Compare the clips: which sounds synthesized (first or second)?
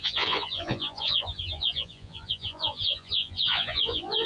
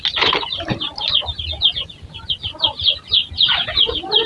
first